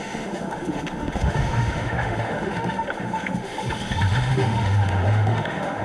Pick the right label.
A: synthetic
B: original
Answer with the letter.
A